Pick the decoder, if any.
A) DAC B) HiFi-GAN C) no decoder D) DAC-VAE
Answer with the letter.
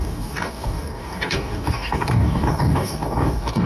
A